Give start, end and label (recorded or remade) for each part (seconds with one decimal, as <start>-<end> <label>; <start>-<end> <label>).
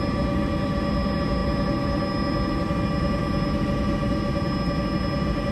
0.0-5.5 recorded